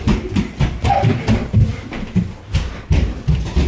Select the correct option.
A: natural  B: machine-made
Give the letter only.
A